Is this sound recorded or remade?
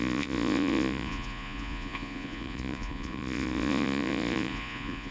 remade